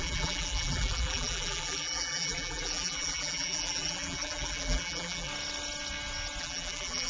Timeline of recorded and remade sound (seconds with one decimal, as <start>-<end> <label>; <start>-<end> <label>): 0.0-5.3 remade; 5.3-6.4 recorded; 6.4-7.1 remade